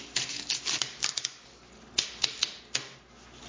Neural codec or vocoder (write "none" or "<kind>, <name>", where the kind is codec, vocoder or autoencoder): none